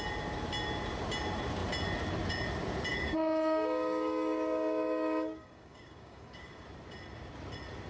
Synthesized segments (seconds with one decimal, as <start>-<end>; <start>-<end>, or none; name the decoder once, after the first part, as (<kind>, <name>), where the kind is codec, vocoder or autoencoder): 2.9-6.6 (codec, DAC)